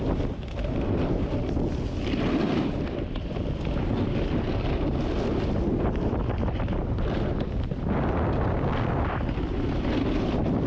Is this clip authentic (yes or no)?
yes